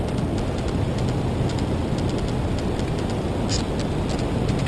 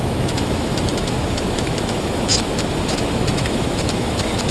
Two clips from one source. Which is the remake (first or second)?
second